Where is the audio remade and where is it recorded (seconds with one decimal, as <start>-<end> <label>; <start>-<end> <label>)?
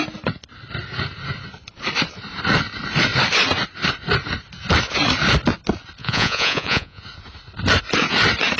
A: 0.0-6.0 recorded; 6.0-7.0 remade; 7.0-8.6 recorded